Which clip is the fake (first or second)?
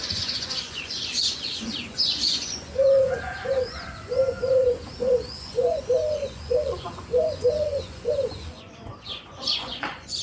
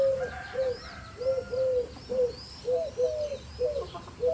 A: first